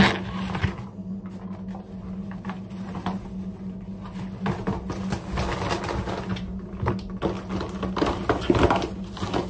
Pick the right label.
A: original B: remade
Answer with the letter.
A